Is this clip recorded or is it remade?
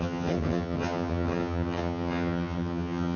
remade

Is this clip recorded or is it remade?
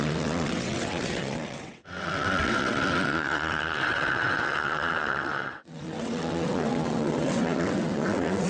remade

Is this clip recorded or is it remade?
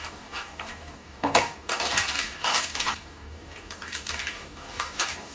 remade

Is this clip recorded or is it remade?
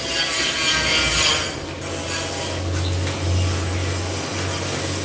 recorded